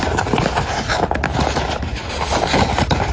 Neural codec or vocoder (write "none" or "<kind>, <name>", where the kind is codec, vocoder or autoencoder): none